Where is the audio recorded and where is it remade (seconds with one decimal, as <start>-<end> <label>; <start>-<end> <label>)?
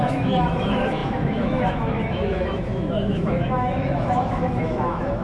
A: 0.0-5.2 remade